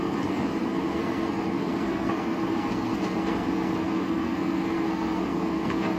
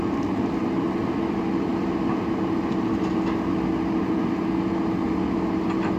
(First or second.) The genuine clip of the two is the second